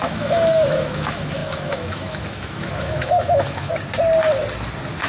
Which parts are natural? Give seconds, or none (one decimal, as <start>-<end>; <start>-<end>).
3.7-5.1